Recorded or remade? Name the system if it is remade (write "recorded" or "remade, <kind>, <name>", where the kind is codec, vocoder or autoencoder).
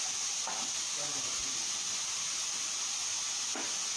recorded